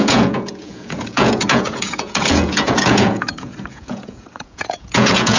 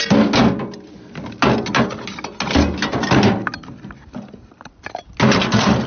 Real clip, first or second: second